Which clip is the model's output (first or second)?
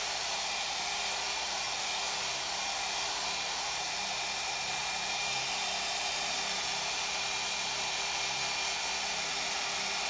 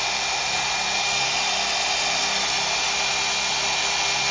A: first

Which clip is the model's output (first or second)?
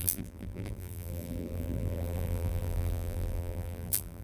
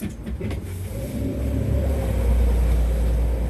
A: first